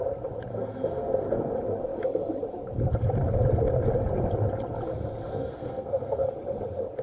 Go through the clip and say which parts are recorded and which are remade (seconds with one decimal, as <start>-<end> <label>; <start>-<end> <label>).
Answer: 0.0-0.5 recorded; 0.5-1.5 remade; 1.5-5.3 recorded; 5.3-6.3 remade; 6.3-7.0 recorded